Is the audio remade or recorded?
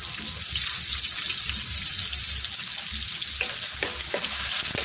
recorded